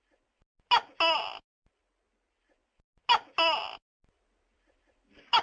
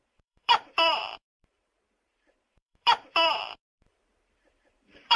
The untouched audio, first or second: first